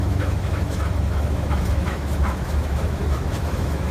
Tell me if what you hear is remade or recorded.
remade